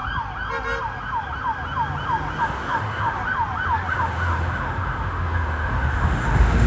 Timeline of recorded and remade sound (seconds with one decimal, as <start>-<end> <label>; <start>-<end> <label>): 0.0-2.4 recorded; 2.4-3.2 remade; 3.2-3.9 recorded; 3.9-6.7 remade